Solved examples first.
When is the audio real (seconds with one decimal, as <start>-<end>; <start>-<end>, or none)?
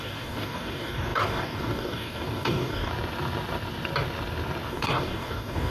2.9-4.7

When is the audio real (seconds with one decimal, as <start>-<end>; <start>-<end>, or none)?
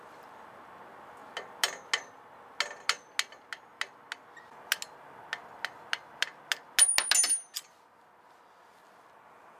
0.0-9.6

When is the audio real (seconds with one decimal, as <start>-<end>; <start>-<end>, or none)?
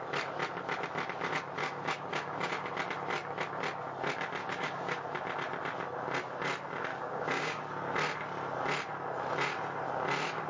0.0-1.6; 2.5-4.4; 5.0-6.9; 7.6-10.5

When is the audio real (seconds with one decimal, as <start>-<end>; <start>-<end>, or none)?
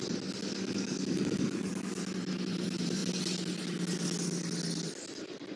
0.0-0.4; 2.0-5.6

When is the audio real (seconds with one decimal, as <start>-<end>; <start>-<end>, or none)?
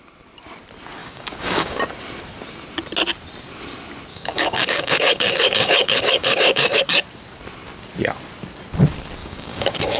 0.0-1.0; 1.8-4.1; 6.8-9.2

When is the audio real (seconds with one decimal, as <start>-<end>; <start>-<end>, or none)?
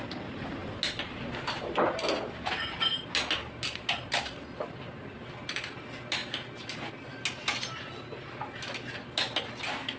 0.0-10.0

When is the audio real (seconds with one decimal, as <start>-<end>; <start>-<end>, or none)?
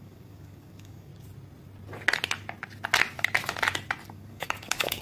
1.1-4.1